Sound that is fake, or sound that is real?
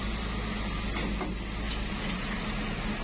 real